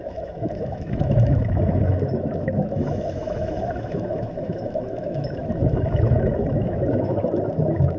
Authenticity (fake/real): fake